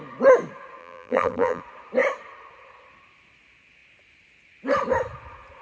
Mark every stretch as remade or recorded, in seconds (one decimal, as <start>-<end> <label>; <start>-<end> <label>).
0.0-0.8 recorded; 0.8-1.6 remade; 1.6-5.6 recorded